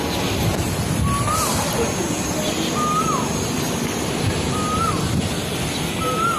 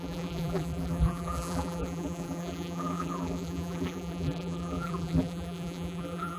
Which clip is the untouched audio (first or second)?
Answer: first